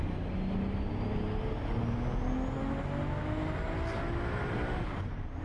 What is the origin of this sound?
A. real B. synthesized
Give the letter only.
A